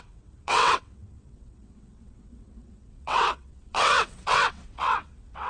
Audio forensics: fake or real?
fake